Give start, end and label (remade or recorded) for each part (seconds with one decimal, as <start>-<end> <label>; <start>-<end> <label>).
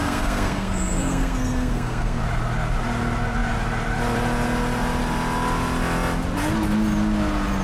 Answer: 0.0-2.2 remade; 2.2-7.6 recorded